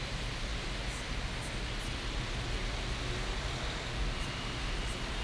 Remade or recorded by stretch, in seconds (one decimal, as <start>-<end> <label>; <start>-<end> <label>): 0.0-5.2 recorded